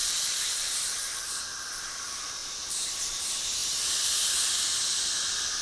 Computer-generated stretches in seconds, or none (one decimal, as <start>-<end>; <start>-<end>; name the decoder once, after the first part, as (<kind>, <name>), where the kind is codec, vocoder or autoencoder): 0.0-1.4 (vocoder, BigVGAN v2); 2.4-3.2